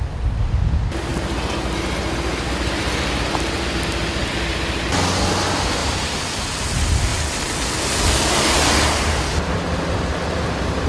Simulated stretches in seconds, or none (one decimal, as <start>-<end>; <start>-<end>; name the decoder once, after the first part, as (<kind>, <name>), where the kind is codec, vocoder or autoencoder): 5.8-6.5 (vocoder, BigVGAN v2)